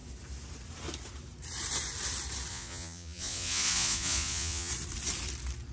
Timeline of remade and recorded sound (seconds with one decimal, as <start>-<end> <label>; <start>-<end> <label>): 0.0-2.5 recorded; 2.5-4.7 remade; 4.7-5.7 recorded